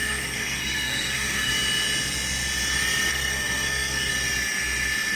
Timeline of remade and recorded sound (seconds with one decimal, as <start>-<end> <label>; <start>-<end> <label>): 0.0-1.5 remade; 1.5-3.1 recorded; 3.1-4.1 remade; 4.1-5.2 recorded